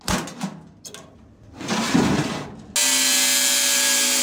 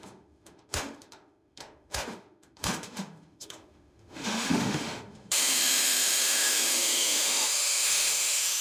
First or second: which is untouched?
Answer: first